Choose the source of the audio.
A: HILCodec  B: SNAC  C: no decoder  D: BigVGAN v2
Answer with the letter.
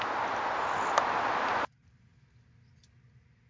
C